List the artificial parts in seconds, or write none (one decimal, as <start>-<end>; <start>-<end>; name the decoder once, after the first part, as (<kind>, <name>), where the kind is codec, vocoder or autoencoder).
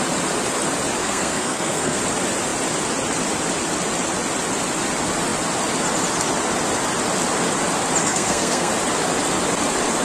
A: 1.0-2.0 (codec, SNAC); 8.0-8.7